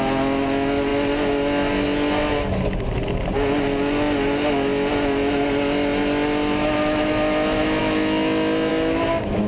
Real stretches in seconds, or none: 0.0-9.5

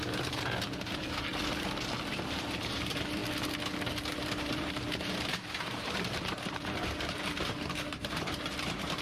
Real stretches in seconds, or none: 1.3-2.1; 3.2-4.1